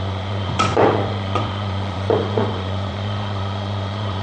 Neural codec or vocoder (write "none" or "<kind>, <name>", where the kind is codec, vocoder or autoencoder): vocoder, Vocos